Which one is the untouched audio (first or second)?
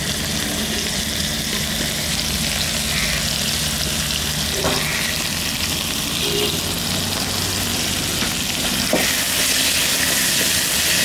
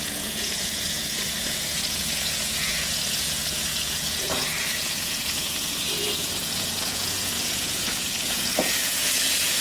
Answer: first